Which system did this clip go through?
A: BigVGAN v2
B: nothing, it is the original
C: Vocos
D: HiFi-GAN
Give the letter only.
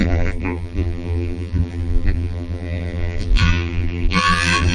A